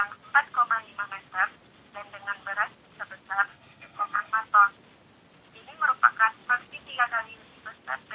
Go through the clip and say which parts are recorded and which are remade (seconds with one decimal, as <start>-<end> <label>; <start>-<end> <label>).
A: 0.0-3.5 recorded; 3.5-4.3 remade; 4.3-8.1 recorded